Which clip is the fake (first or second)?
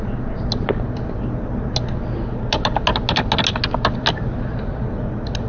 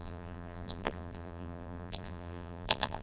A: second